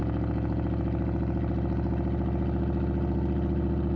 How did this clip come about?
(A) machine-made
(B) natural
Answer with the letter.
B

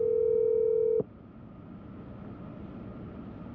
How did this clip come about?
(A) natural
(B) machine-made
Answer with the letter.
A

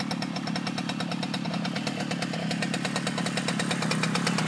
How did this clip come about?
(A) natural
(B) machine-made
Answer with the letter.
A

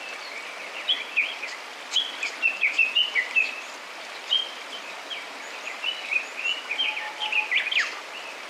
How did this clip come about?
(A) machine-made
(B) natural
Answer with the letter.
A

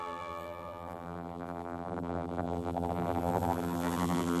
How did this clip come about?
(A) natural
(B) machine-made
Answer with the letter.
B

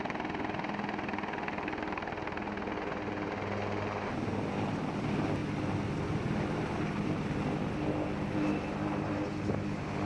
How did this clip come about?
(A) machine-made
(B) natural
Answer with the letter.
B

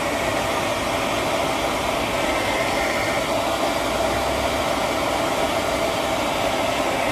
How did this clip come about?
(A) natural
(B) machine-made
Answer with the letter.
A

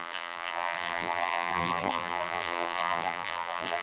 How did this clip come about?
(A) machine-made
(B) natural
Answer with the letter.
A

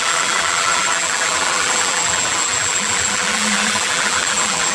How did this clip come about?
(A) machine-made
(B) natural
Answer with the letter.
A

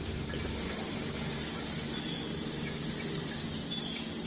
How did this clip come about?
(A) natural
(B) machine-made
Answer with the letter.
A